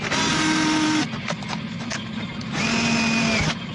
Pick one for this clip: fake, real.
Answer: real